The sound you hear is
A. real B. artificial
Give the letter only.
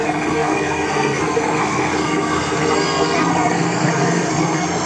B